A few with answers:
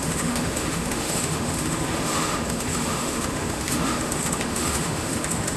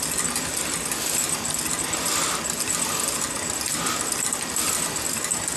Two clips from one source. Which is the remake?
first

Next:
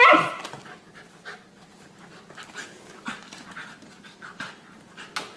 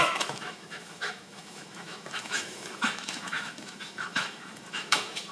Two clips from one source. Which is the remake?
second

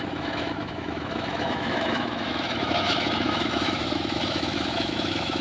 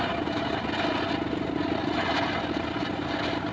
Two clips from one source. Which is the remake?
first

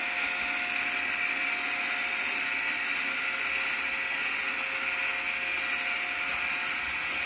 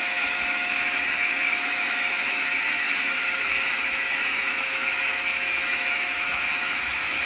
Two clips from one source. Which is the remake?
second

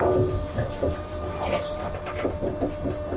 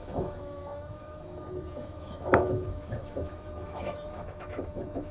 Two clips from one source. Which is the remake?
second